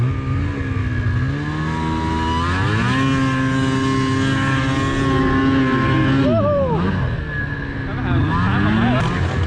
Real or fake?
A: real